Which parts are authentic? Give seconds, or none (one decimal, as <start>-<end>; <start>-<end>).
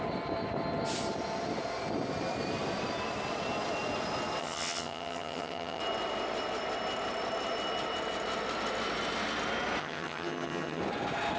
0.0-4.4; 5.8-9.8; 10.8-11.4